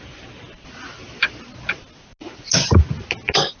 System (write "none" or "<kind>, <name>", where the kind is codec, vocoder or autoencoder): none